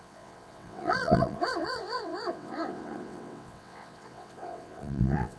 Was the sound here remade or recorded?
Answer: remade